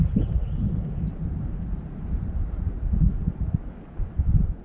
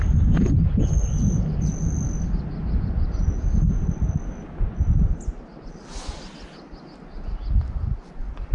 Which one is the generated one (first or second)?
first